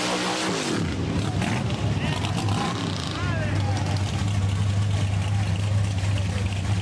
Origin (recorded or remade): recorded